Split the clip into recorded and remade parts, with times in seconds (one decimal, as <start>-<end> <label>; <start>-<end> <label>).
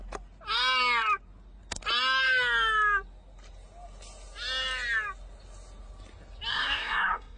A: 0.0-6.5 recorded; 6.5-7.4 remade